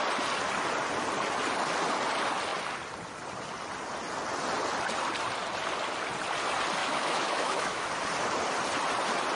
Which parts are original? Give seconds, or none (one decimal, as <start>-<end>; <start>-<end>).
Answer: 0.0-6.8; 7.9-9.4